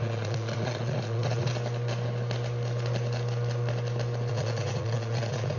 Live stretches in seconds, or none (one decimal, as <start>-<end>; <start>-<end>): 1.5-4.3